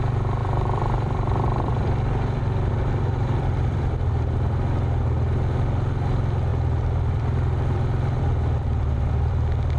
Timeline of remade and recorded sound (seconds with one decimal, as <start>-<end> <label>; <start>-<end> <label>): 0.0-0.4 recorded; 0.4-4.1 remade; 4.1-6.5 recorded; 6.5-9.3 remade; 9.3-9.8 recorded